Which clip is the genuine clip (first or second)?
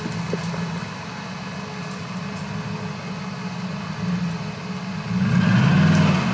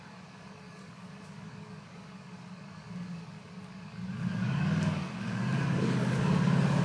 first